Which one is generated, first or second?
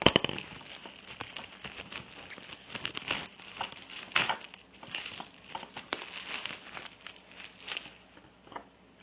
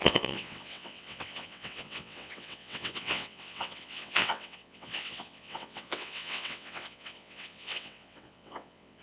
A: second